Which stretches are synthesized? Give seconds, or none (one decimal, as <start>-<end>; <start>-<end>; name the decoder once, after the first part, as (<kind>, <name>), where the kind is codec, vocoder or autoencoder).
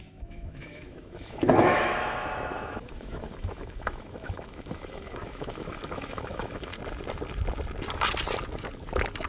0.0-6.7 (autoencoder, DAC-VAE)